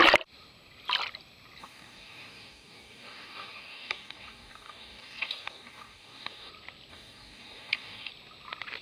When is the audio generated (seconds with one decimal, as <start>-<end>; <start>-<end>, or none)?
1.6-6.5; 6.9-8.1